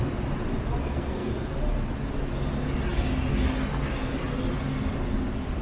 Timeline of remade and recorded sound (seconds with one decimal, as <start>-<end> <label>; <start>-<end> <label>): 0.0-0.8 recorded; 0.8-1.3 remade; 1.3-5.6 recorded